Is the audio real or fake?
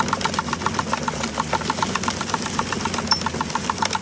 real